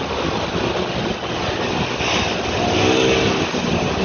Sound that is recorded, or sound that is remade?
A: recorded